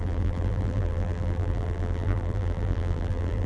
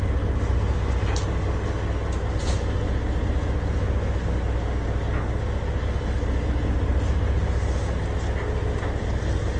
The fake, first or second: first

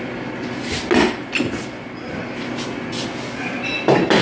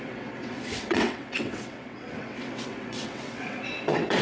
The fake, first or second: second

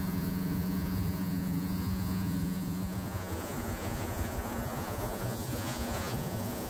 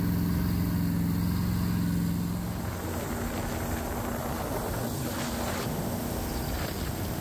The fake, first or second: first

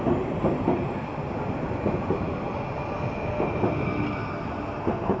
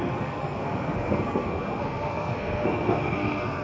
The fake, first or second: second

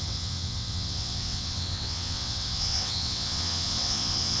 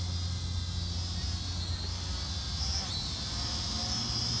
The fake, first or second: first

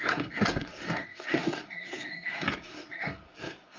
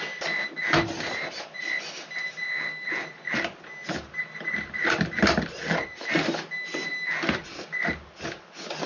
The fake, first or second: first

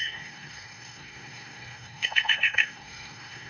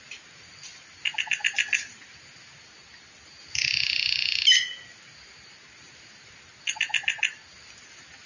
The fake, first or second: first